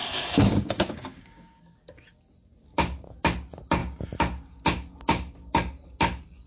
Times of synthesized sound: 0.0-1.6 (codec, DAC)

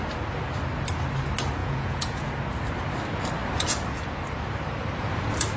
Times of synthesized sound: 1.6-2.3 (vocoder, Vocos)

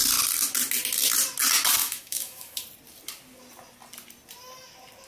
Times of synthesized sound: 1.8-2.6 (autoencoder, DAC-VAE)